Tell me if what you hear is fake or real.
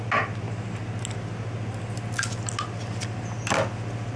real